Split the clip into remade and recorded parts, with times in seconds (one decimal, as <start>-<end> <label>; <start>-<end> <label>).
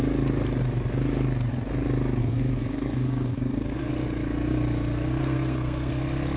0.0-2.2 recorded; 2.2-3.9 remade; 3.9-5.2 recorded; 5.2-5.9 remade; 5.9-6.4 recorded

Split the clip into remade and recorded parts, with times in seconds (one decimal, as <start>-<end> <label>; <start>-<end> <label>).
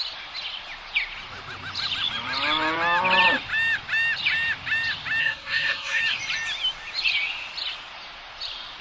0.0-5.2 recorded; 5.2-6.0 remade; 6.0-8.8 recorded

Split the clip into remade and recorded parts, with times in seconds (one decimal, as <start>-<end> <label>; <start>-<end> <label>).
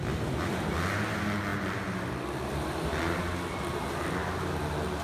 0.0-5.0 recorded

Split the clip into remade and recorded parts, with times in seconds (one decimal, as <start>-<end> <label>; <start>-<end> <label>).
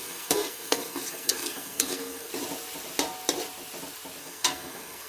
0.0-2.3 remade; 2.3-4.2 recorded; 4.2-5.1 remade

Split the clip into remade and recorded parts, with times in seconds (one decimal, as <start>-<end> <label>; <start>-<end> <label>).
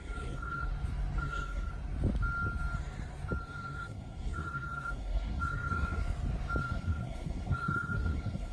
0.0-0.7 remade; 0.7-1.2 recorded; 1.2-1.7 remade; 1.7-3.4 recorded; 3.4-6.0 remade; 6.0-6.6 recorded; 6.6-8.5 remade